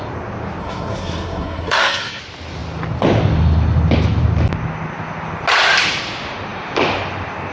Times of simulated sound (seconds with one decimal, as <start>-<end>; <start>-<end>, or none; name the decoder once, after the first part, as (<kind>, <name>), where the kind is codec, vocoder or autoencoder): 0.6-2.2 (codec, SNAC)